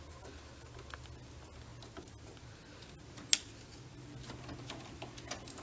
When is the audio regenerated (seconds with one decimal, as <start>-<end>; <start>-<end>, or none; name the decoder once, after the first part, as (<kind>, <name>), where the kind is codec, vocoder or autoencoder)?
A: none